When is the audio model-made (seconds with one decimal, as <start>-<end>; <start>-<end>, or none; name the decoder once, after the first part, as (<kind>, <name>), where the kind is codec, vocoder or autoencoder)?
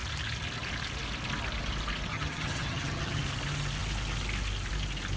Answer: 2.1-3.2 (vocoder, HiFi-GAN)